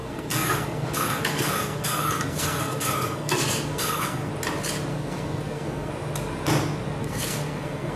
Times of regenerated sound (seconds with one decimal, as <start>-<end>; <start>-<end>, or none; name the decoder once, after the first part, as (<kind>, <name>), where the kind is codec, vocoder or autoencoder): 0.0-4.3 (codec, SNAC); 4.9-5.9; 7.0-8.0